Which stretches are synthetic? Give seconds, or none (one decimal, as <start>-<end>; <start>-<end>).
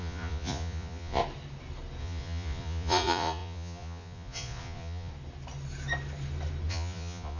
0.0-1.2; 2.0-5.1; 6.7-7.4